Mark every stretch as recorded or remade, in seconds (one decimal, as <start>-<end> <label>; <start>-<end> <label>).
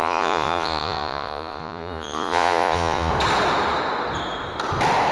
0.0-3.1 remade; 3.1-5.1 recorded